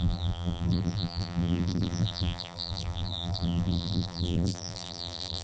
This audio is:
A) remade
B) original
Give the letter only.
A